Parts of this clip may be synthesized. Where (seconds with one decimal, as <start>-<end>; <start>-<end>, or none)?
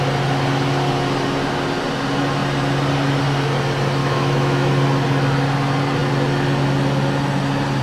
4.0-4.7